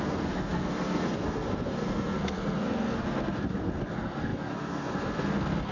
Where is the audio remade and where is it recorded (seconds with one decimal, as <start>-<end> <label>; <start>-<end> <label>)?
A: 0.0-5.7 remade